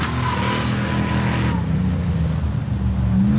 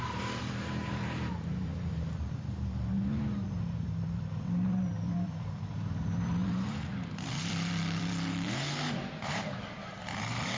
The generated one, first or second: second